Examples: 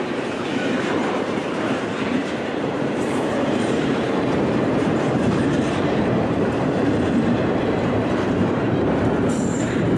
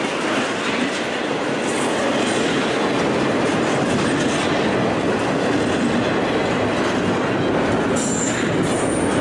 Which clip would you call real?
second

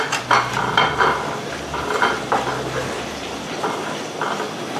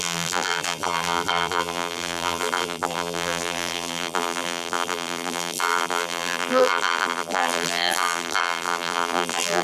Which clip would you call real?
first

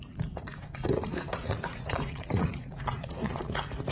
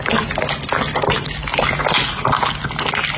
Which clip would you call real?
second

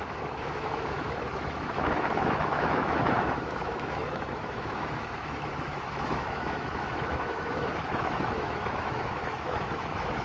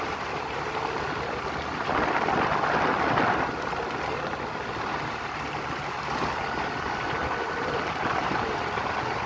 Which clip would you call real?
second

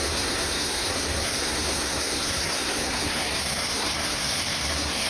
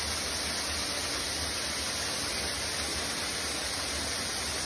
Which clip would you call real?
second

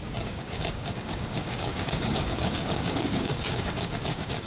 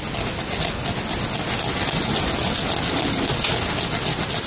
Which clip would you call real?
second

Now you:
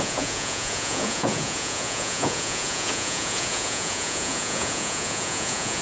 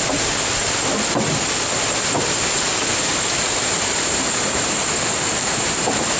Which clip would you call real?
second